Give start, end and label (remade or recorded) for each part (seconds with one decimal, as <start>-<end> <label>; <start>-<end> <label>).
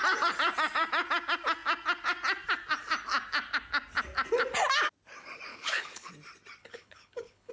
0.0-5.5 recorded; 5.5-6.1 remade; 6.1-6.6 recorded; 6.6-7.5 remade